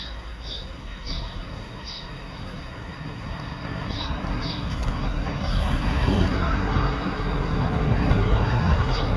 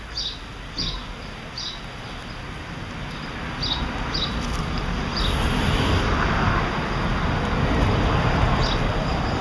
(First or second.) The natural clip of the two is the second